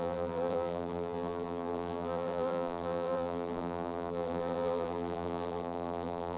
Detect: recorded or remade remade